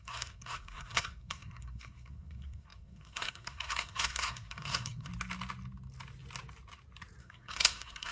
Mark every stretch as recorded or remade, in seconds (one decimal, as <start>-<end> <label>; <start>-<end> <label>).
0.0-5.1 remade; 5.1-7.2 recorded; 7.2-8.1 remade